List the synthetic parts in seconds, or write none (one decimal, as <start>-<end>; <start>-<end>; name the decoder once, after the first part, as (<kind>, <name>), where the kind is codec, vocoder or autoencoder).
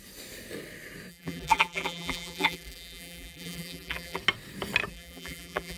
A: 1.1-4.2 (vocoder, BigVGAN v2); 4.9-5.8